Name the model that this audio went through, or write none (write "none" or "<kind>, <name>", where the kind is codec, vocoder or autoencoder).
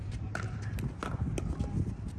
none